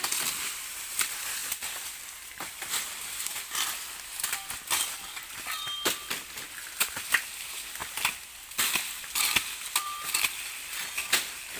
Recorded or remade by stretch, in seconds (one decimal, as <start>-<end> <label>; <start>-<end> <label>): 0.0-11.6 recorded